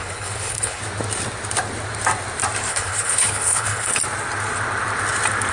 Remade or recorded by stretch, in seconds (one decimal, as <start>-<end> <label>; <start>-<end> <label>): 0.0-0.8 remade; 0.8-2.7 recorded; 2.7-3.9 remade; 3.9-5.5 recorded